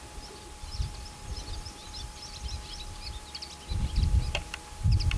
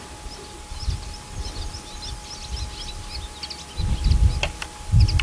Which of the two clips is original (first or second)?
second